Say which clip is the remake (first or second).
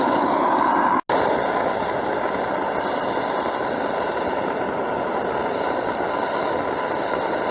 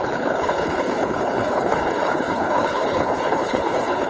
second